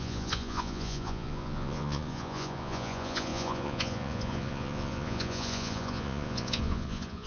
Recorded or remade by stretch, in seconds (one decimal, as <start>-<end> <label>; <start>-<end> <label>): 0.0-7.3 remade